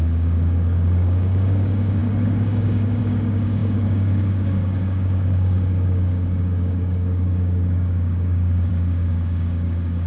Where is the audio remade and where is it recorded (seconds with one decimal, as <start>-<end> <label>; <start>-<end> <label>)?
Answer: 0.0-10.1 remade

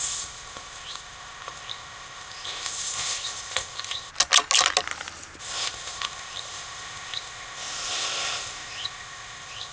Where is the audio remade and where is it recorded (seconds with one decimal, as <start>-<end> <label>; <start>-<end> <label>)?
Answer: 0.0-4.1 remade; 4.1-5.4 recorded; 5.4-9.7 remade

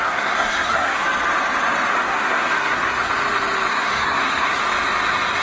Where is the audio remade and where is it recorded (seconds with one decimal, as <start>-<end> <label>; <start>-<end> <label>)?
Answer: 0.0-1.0 remade; 1.0-1.9 recorded; 1.9-3.1 remade; 3.1-3.7 recorded; 3.7-4.6 remade; 4.6-5.4 recorded

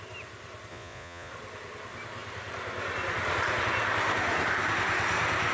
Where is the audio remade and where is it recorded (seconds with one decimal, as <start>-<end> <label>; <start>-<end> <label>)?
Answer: 0.0-0.7 recorded; 0.7-1.3 remade; 1.3-5.5 recorded

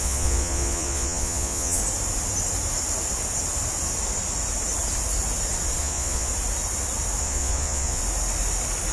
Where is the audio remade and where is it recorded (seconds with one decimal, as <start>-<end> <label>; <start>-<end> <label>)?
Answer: 0.0-1.8 remade; 1.8-5.8 recorded; 5.8-6.3 remade; 6.3-7.2 recorded; 7.2-8.0 remade; 8.0-8.9 recorded

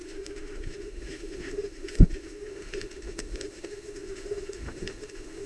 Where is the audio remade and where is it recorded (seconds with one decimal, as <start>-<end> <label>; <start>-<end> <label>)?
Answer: 0.0-5.5 remade

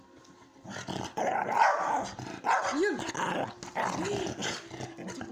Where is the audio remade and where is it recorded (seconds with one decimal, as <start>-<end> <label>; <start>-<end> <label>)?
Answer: 0.0-5.3 recorded

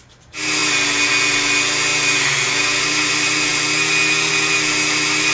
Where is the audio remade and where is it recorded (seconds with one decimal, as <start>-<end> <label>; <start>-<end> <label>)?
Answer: 0.0-5.3 recorded